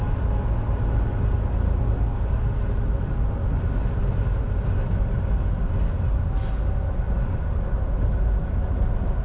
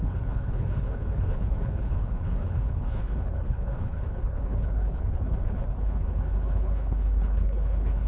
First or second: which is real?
first